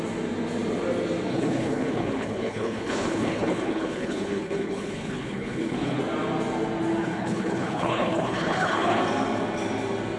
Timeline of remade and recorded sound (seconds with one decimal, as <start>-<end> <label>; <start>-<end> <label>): 0.0-1.3 recorded; 1.3-6.0 remade; 6.0-7.0 recorded; 7.0-9.0 remade; 9.0-10.2 recorded